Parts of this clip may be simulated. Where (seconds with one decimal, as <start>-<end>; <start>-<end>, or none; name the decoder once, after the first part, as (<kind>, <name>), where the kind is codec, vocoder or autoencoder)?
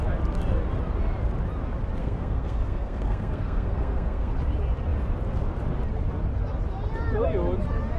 2.0-4.3 (codec, SNAC)